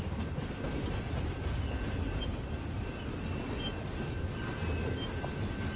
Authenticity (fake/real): real